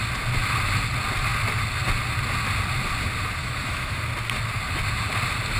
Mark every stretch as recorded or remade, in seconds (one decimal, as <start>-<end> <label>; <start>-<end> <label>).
0.0-3.4 recorded; 3.4-4.0 remade; 4.0-5.6 recorded